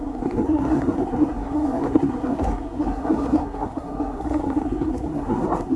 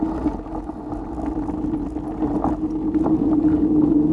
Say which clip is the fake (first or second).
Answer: first